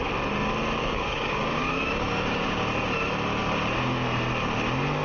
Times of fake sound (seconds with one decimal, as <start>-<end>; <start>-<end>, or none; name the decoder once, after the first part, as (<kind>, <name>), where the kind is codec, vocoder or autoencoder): 0.8-2.6 (codec, DAC)